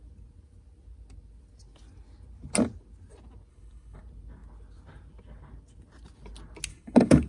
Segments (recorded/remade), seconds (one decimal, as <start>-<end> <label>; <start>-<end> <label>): 0.0-3.5 recorded; 3.5-4.0 remade; 4.0-6.7 recorded; 6.7-7.3 remade